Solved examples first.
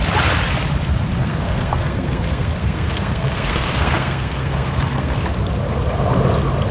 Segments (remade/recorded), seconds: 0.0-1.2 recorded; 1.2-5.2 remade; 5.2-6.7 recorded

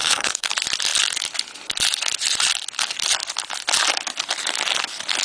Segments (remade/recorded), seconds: 0.0-0.5 remade; 0.5-5.2 recorded

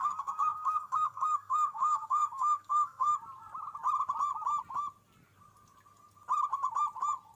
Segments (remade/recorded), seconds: 0.0-3.1 remade; 3.1-7.4 recorded